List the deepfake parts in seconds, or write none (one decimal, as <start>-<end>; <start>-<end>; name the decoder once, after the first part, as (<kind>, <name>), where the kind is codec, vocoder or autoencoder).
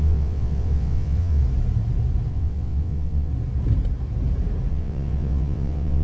0.0-1.4 (vocoder, WaveNeXt); 2.3-3.3; 4.7-6.0